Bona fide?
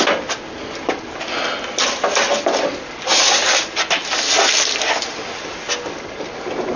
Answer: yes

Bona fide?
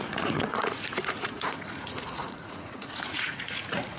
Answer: no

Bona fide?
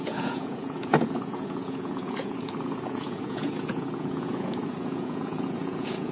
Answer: no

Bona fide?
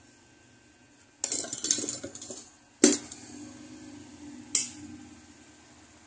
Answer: yes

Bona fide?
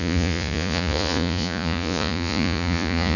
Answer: no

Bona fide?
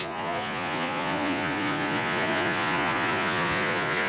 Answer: no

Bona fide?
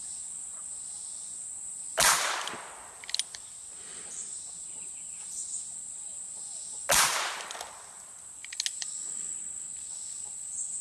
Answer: yes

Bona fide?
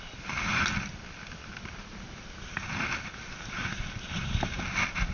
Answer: yes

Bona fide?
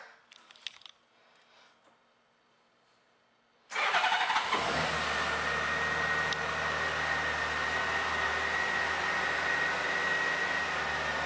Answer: yes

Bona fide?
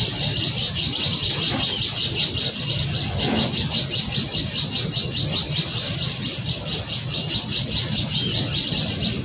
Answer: yes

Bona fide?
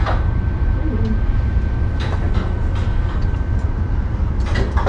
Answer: yes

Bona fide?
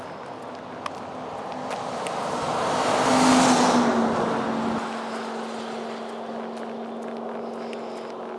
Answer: yes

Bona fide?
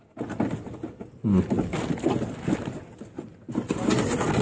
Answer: yes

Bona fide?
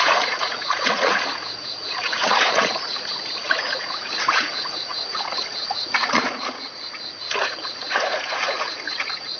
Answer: no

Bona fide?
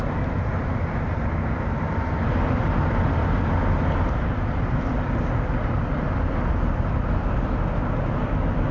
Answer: yes